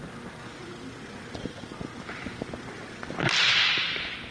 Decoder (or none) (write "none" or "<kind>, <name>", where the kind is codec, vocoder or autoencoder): none